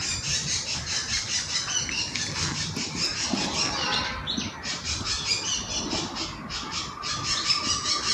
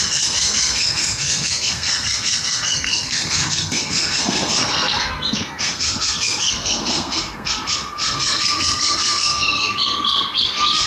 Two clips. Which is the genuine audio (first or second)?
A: first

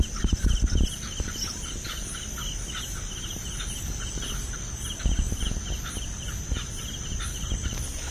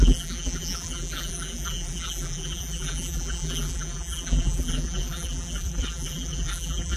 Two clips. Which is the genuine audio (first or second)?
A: first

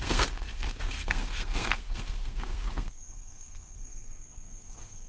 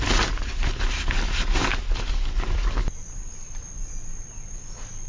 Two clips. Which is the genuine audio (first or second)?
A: second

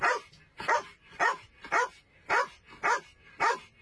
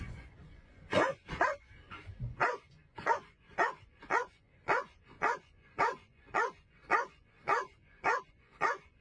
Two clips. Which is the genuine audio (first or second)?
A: first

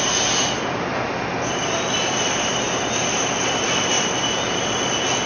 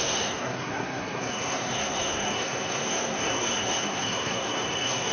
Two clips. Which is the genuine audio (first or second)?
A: first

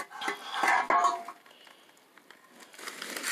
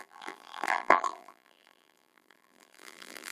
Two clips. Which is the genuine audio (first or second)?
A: first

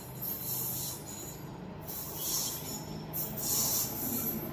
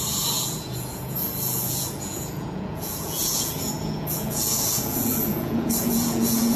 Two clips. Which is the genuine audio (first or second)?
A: first